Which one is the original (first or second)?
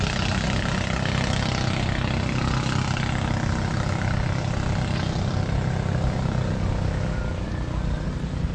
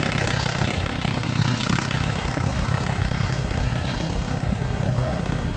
first